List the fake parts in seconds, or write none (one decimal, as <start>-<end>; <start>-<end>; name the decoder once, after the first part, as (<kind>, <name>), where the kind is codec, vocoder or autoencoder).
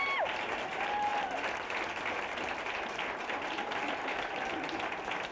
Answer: none